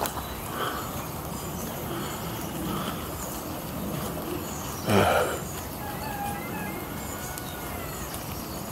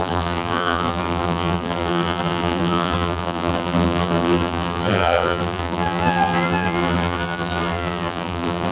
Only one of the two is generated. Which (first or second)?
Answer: second